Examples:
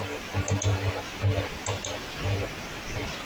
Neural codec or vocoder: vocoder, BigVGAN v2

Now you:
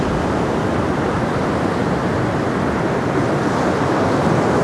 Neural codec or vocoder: none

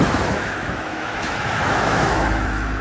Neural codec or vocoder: autoencoder, DAC-VAE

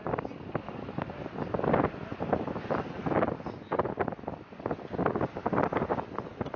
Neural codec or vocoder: none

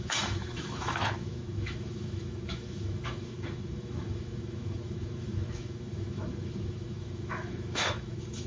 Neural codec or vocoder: autoencoder, DAC-VAE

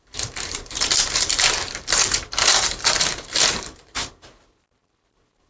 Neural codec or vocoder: vocoder, BigVGAN v2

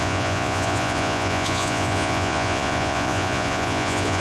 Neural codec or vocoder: vocoder, Vocos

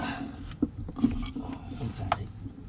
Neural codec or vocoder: none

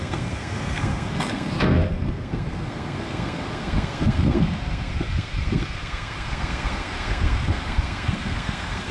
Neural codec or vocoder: codec, SNAC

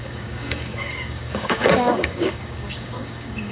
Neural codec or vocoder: codec, DAC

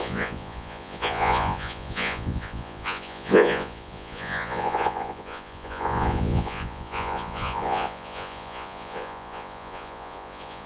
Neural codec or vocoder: vocoder, Vocos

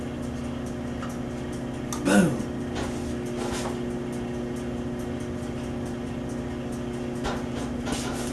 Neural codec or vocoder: none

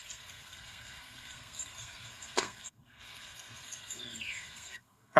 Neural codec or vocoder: codec, SNAC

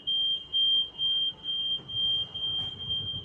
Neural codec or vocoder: none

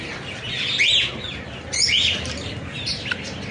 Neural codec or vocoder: vocoder, BigVGAN v2